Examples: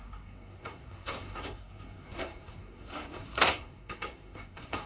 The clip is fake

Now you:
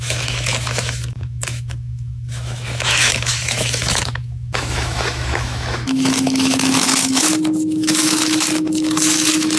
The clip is fake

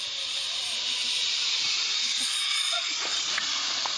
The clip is fake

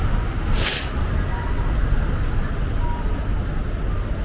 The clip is real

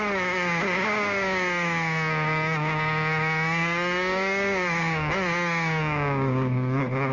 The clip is fake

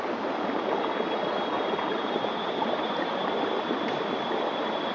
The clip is real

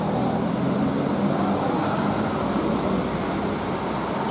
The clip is real